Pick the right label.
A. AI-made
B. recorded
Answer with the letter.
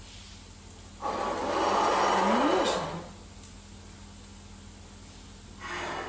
B